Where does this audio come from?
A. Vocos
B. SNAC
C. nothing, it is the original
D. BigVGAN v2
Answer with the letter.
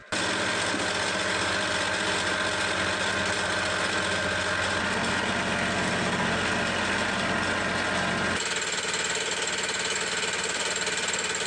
C